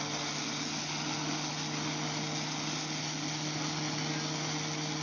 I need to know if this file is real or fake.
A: real